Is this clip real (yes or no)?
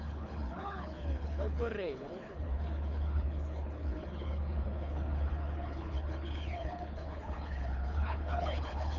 no